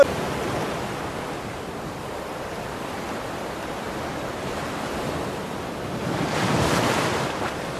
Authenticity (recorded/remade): remade